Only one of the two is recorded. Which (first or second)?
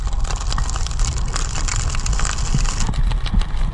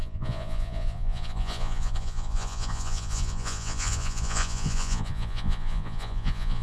first